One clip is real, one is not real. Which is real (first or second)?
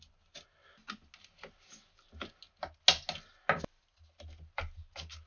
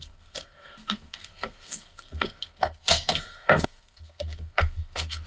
first